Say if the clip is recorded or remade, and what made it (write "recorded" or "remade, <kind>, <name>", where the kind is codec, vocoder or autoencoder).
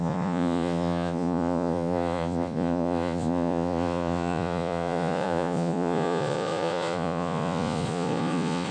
remade, vocoder, Vocos